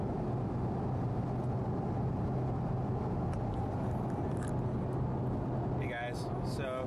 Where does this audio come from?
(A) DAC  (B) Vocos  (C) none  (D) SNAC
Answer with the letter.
C